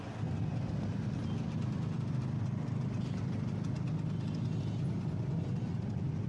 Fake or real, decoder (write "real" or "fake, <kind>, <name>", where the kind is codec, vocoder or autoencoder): real